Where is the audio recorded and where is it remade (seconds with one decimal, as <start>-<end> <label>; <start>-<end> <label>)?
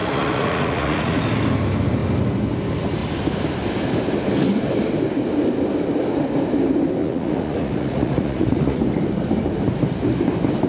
0.0-1.2 remade; 1.2-7.0 recorded; 7.0-8.8 remade; 8.8-10.7 recorded